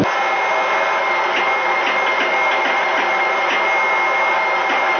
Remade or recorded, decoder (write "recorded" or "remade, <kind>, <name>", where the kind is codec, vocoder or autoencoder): recorded